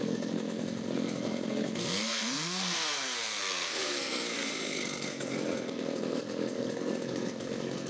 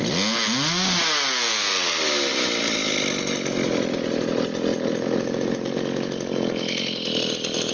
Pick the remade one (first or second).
first